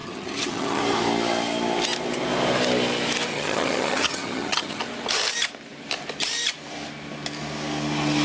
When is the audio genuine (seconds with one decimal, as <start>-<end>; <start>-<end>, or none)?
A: 0.8-3.3; 4.8-8.2